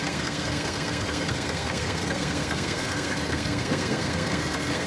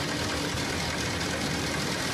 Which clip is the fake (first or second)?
first